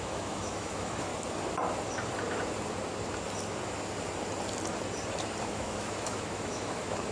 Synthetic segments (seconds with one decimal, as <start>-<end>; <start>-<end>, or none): 0.0-1.1; 5.4-7.1